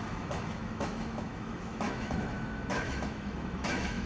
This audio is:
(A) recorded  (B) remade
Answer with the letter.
B